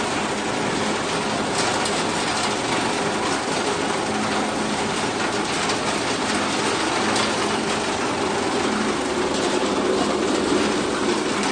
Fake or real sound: real